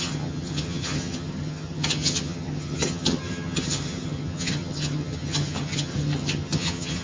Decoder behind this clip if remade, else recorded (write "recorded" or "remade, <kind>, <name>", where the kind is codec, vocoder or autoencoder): remade, vocoder, HiFi-GAN